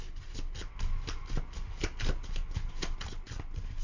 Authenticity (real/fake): real